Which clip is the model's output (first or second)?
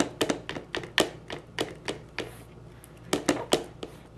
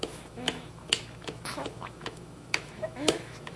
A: second